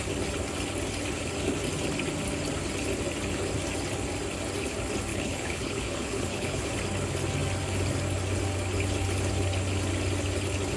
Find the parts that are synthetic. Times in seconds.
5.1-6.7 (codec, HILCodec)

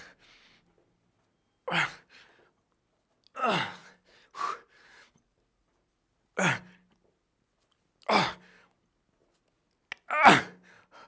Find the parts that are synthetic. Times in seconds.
3.8-6.0 (vocoder, BigVGAN v2)

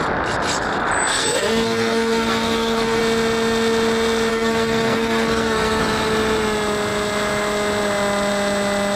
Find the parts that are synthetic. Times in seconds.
1.1-3.0 (codec, SNAC); 4.3-5.8

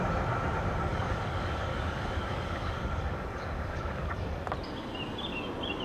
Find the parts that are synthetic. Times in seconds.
0.9-4.4 (codec, DAC)

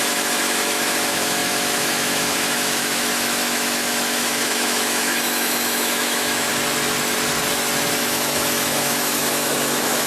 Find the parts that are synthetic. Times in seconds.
0.0-6.5 (autoencoder, DAC-VAE); 8.0-10.1

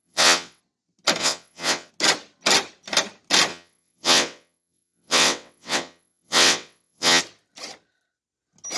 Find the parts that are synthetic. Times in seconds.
0.0-0.6 (vocoder, WaveNeXt); 1.2-1.9; 3.5-7.2